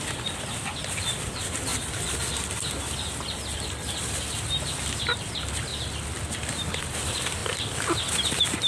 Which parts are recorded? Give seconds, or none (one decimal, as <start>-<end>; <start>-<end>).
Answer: 5.7-6.8; 7.4-8.1

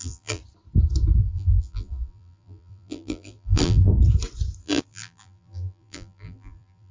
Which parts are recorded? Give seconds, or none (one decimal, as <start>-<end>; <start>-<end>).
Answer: 0.4-1.2; 3.9-4.6

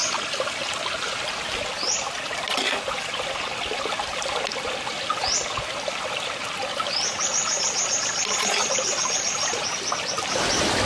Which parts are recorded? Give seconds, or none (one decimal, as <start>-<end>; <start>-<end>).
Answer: 5.0-10.9

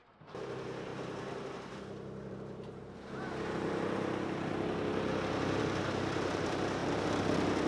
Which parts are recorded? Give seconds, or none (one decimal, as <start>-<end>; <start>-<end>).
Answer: 0.9-2.3; 4.5-5.6

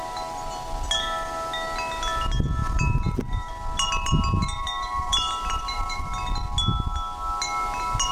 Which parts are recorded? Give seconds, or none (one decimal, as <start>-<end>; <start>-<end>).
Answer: 0.0-2.6; 3.5-4.4; 6.1-8.1

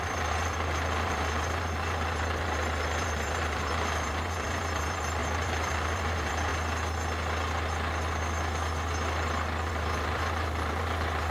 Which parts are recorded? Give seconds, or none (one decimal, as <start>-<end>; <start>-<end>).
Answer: 6.5-9.7

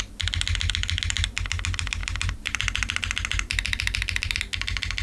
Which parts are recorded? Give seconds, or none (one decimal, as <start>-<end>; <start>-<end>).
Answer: 0.0-2.0; 4.4-5.0

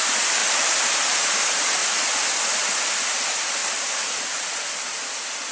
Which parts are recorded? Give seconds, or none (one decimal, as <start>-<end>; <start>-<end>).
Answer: 0.0-0.4; 1.4-3.6; 4.4-5.5